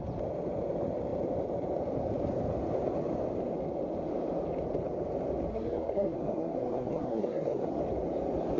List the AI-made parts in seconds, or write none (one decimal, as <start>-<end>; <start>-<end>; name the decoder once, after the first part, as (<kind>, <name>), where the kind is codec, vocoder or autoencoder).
5.5-7.8 (codec, SNAC)